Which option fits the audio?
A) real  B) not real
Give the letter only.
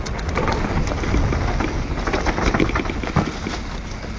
A